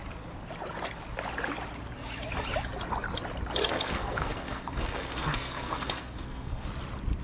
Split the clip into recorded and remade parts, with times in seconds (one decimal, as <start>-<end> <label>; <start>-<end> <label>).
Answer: 0.0-3.6 recorded; 3.6-6.7 remade; 6.7-7.2 recorded